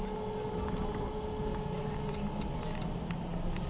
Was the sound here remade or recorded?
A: recorded